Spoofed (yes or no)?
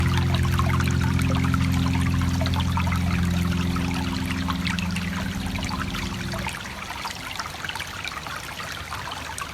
no